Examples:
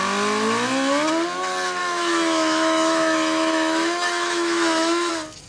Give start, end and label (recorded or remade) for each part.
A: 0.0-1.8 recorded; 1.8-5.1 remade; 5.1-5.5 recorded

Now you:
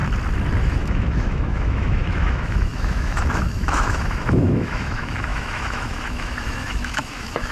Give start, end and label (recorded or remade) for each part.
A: 0.0-0.6 recorded; 0.6-7.5 remade

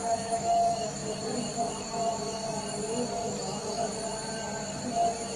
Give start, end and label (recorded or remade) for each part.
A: 0.0-1.0 remade; 1.0-3.0 recorded; 3.0-3.9 remade; 3.9-5.4 recorded

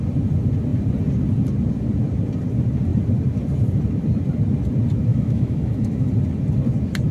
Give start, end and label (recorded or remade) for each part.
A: 0.0-5.1 recorded; 5.1-6.1 remade; 6.1-7.1 recorded

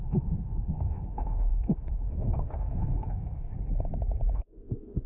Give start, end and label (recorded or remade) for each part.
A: 0.0-3.5 remade; 3.5-4.3 recorded; 4.3-5.1 remade

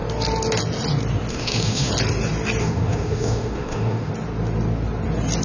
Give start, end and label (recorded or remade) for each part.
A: 0.0-1.3 recorded; 1.3-1.9 remade; 1.9-2.6 recorded; 2.6-4.1 remade; 4.1-5.4 recorded

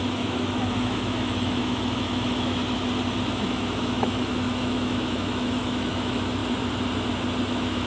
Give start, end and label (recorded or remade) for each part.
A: 0.0-2.6 remade; 2.6-3.2 recorded; 3.2-6.4 remade; 6.4-7.5 recorded; 7.5-7.9 remade

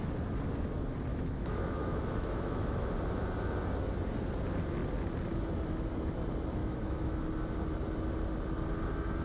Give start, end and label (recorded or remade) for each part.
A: 0.0-1.1 recorded; 1.1-2.9 remade; 2.9-6.6 recorded; 6.6-7.2 remade; 7.2-9.2 recorded